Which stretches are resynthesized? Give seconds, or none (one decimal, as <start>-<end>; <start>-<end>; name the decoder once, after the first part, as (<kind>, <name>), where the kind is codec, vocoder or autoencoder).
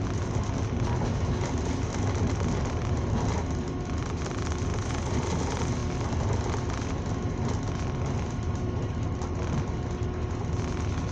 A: none